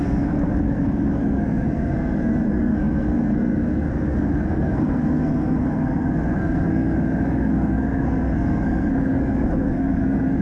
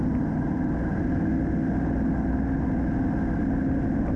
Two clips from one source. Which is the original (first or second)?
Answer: second